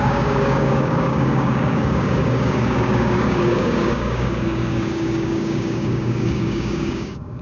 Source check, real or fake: fake